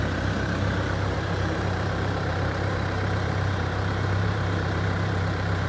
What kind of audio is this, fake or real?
fake